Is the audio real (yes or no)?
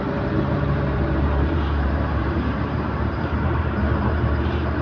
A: no